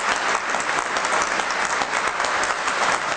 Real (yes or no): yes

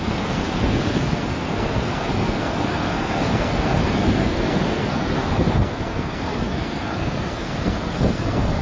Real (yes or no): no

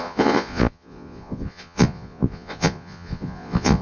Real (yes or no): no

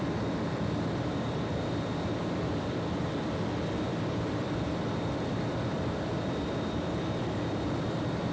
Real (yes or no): no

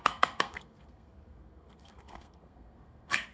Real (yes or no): no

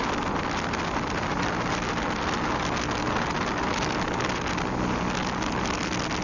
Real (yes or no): yes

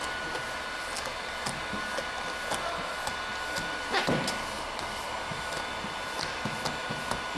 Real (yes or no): yes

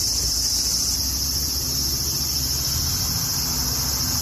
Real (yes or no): yes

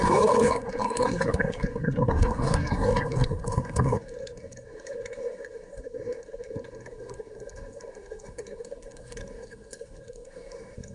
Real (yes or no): no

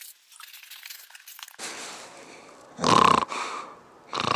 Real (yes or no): yes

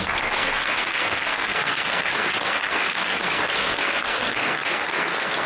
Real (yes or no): no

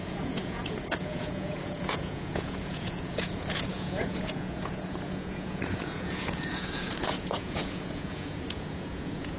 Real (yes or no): no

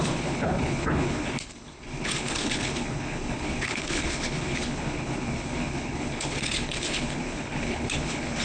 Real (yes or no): no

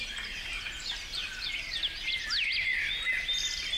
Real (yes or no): yes